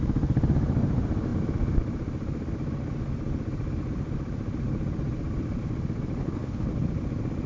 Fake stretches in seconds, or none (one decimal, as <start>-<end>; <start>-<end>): 6.2-6.7